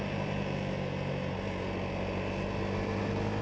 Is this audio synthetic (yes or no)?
no